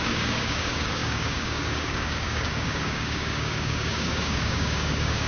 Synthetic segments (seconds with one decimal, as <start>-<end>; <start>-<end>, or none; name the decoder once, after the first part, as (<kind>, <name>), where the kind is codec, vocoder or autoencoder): 0.0-5.3 (codec, DAC)